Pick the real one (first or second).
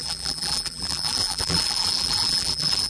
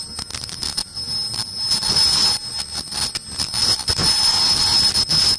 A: second